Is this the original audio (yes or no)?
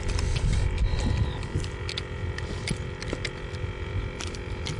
yes